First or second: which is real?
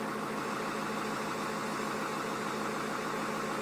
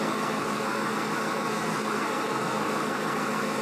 first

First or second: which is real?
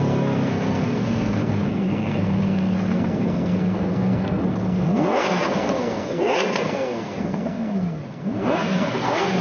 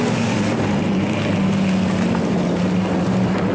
second